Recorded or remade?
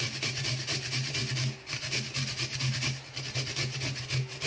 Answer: recorded